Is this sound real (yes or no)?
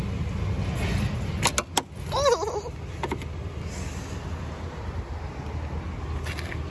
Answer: yes